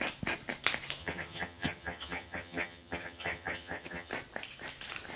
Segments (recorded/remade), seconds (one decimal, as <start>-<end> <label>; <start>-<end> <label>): 0.0-1.0 recorded; 1.0-4.1 remade; 4.1-5.2 recorded